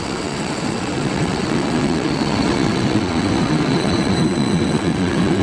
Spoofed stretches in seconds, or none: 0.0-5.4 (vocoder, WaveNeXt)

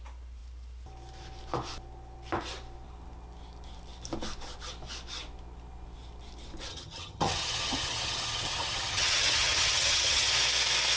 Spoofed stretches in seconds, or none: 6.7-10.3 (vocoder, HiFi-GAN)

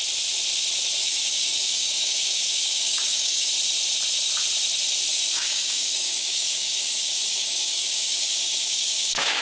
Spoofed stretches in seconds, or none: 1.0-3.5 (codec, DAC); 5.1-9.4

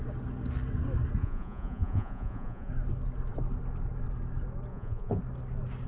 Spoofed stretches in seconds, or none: 1.2-2.7 (vocoder, Vocos); 4.7-5.2

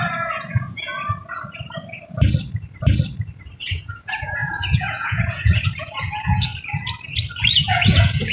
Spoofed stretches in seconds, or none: 0.0-0.9 (vocoder, Vocos); 3.6-6.5; 7.5-8.3

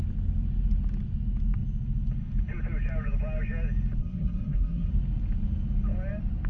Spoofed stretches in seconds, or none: 4.0-4.9 (codec, SNAC)